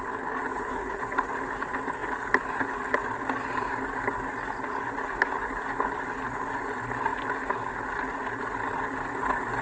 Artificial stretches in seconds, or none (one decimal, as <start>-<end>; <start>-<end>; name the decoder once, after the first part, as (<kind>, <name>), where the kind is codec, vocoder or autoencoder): 0.5-1.0 (codec, HILCodec)